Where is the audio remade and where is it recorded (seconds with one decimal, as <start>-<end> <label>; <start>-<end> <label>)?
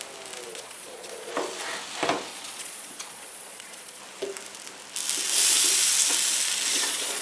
0.0-0.5 recorded; 0.5-1.3 remade; 1.3-2.3 recorded; 2.3-4.0 remade; 4.0-6.7 recorded; 6.7-7.2 remade